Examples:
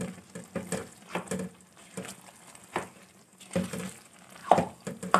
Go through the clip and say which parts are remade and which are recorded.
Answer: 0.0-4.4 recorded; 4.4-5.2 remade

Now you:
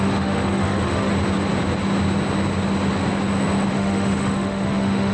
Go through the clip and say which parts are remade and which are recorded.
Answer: 0.0-1.1 remade; 1.1-3.7 recorded; 3.7-5.1 remade

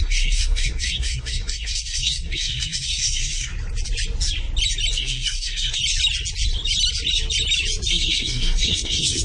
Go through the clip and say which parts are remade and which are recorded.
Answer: 0.0-3.5 remade; 3.5-4.9 recorded; 4.9-5.8 remade; 5.8-7.9 recorded; 7.9-9.2 remade

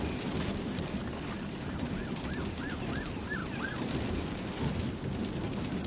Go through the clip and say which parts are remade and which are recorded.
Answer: 0.0-5.9 recorded

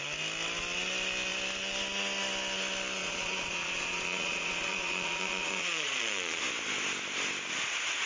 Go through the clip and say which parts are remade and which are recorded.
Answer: 0.0-3.0 recorded; 3.0-6.4 remade; 6.4-8.1 recorded

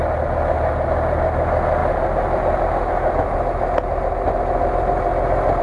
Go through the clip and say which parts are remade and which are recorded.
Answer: 0.0-5.6 recorded

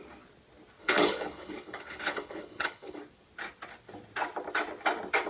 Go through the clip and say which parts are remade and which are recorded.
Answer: 0.0-0.8 recorded; 0.8-3.0 remade; 3.0-5.3 recorded